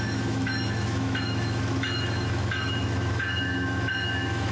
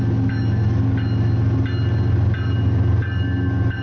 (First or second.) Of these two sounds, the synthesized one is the first